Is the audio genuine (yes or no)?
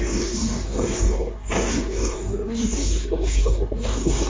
no